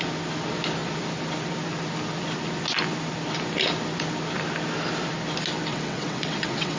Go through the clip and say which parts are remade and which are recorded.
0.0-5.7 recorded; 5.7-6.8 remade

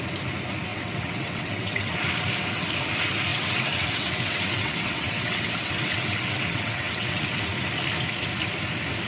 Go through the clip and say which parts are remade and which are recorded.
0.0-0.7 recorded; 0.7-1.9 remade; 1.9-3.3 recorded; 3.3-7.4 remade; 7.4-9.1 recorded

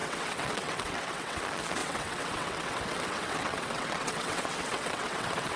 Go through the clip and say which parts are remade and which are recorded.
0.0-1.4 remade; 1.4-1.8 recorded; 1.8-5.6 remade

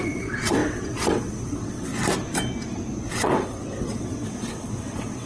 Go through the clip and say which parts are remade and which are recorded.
0.0-1.9 remade; 1.9-3.1 recorded; 3.1-5.3 remade

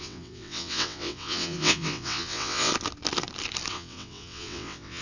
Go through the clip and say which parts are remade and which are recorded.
0.0-2.7 remade; 2.7-3.7 recorded; 3.7-5.0 remade

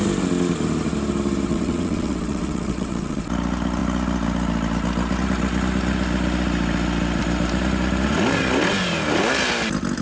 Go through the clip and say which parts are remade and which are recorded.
0.0-1.5 recorded; 1.5-3.2 remade; 3.2-10.0 recorded